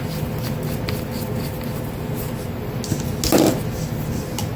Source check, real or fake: real